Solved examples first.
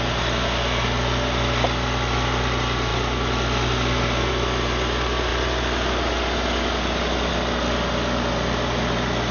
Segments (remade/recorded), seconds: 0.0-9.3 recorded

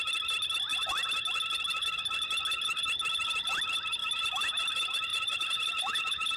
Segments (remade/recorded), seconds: 0.0-4.0 recorded; 4.0-4.6 remade; 4.6-5.1 recorded; 5.1-6.4 remade

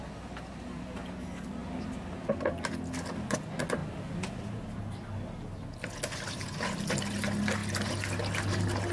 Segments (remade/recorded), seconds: 0.0-8.9 recorded

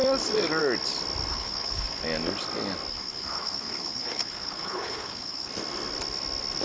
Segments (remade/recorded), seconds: 0.0-1.3 recorded; 1.3-2.0 remade; 2.0-2.9 recorded; 2.9-5.5 remade; 5.5-6.6 recorded

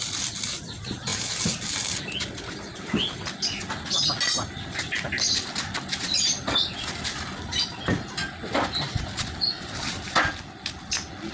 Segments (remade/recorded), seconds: 0.0-11.3 recorded